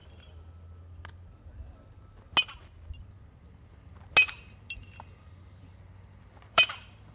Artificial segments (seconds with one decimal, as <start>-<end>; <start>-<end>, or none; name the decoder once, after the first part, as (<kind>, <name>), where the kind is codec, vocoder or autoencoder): 4.3-7.1 (vocoder, BigVGAN v2)